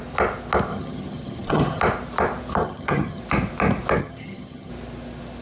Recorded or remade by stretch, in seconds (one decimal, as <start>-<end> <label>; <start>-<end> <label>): 0.0-0.7 recorded; 0.7-1.8 remade; 1.8-2.6 recorded; 2.6-3.2 remade; 3.2-4.0 recorded; 4.0-4.7 remade; 4.7-5.4 recorded